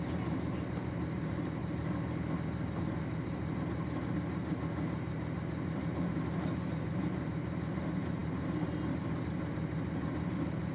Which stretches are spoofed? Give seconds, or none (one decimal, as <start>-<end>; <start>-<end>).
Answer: none